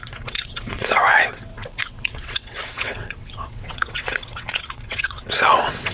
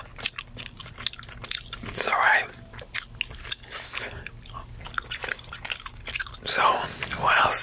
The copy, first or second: first